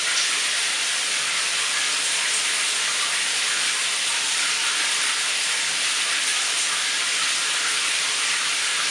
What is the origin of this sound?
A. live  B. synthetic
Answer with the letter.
A